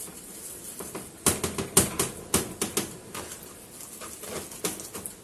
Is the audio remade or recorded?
recorded